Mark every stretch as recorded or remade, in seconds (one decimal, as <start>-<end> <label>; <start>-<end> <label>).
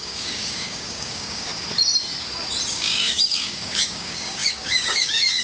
0.0-1.5 remade; 1.5-2.7 recorded; 2.7-5.4 remade